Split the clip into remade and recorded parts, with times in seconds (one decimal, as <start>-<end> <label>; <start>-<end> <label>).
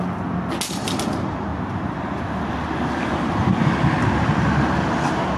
0.0-5.4 recorded